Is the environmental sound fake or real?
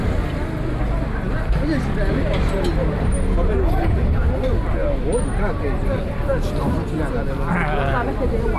real